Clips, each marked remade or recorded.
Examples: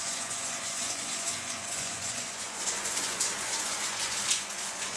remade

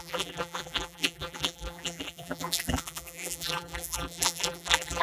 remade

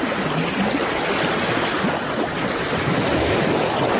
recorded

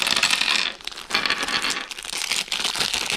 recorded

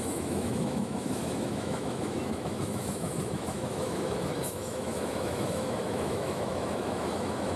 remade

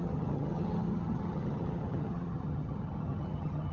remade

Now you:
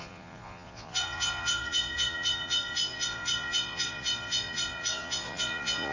remade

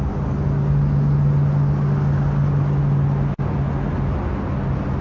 recorded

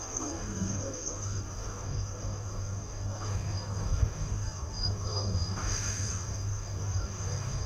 remade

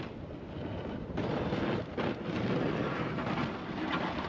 recorded